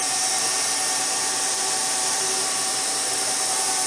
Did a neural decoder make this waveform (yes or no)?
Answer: yes